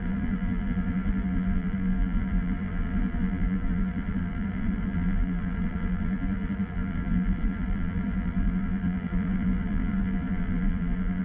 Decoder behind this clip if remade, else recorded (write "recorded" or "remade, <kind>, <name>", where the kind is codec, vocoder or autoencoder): remade, vocoder, BigVGAN v2